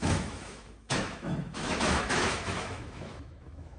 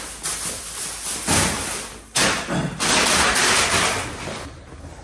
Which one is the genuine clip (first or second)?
second